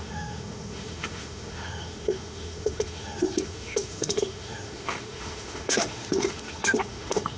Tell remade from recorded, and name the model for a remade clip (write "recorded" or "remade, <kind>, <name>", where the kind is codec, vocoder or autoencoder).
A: remade, autoencoder, DAC-VAE